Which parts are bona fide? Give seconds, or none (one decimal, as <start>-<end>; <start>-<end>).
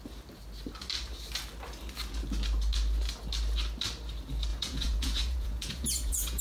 0.0-4.5